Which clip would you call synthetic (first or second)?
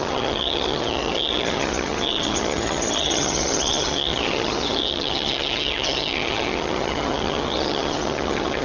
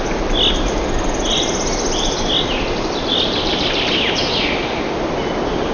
first